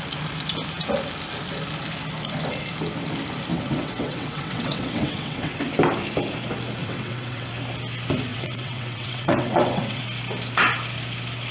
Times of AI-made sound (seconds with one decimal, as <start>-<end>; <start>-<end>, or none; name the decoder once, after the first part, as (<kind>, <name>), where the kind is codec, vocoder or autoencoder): 3.5-5.6 (vocoder, WaveNeXt); 6.8-7.5; 8.3-10.0